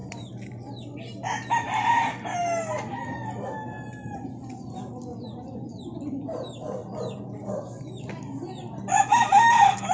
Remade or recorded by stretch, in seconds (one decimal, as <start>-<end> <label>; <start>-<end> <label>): 0.0-5.1 recorded; 5.1-5.8 remade; 5.8-6.8 recorded; 6.8-8.1 remade; 8.1-9.9 recorded